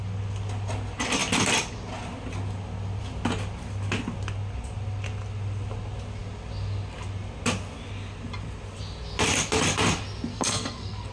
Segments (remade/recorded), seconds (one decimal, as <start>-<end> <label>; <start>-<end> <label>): 0.0-10.3 recorded; 10.3-11.1 remade